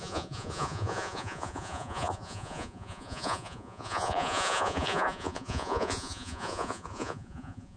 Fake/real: fake